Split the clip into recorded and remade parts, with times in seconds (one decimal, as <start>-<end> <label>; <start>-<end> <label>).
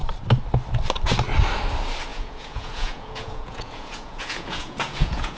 0.0-2.1 recorded; 2.1-5.4 remade